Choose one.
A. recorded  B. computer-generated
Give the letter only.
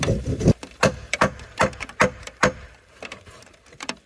B